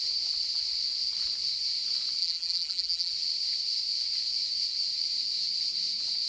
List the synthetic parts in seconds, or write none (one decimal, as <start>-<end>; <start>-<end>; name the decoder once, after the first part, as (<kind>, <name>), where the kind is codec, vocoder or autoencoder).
2.2-3.1 (vocoder, BigVGAN v2)